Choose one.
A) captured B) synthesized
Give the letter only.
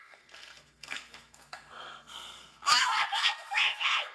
B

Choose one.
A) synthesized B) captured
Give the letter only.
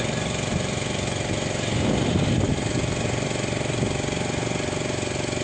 B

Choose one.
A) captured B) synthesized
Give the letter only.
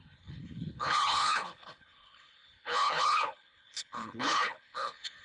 B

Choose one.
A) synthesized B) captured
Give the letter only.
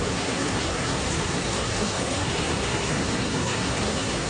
A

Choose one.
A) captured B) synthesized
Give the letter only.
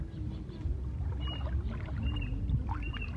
A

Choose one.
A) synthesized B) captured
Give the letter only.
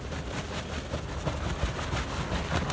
B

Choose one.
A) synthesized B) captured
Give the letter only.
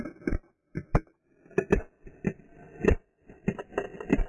B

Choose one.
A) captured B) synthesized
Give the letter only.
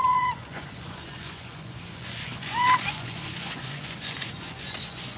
B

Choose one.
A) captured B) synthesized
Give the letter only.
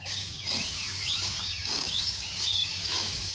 B